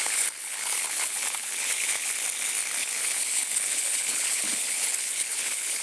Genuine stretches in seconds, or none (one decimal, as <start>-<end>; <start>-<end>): 2.1-2.8